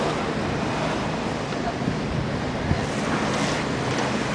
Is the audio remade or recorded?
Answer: recorded